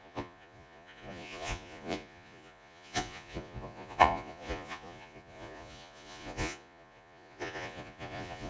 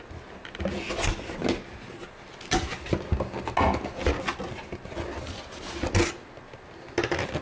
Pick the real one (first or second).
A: second